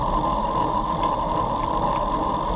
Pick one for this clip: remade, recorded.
recorded